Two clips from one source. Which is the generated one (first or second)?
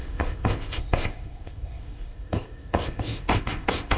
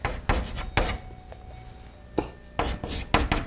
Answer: first